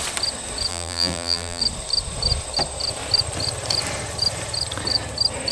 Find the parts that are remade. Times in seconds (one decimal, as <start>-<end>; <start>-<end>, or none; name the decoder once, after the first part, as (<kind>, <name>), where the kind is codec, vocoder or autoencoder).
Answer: 0.7-1.6 (vocoder, BigVGAN v2)